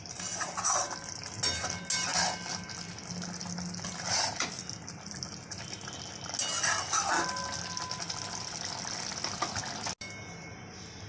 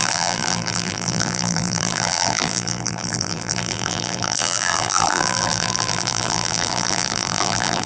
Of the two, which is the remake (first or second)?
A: second